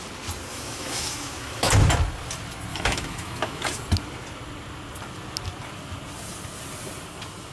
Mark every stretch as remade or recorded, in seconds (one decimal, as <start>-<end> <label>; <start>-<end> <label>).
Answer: 0.0-0.5 recorded; 0.5-1.7 remade; 1.7-2.7 recorded; 2.7-3.8 remade; 3.8-7.5 recorded